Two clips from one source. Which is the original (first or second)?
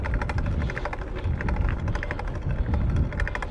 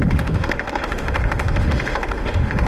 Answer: first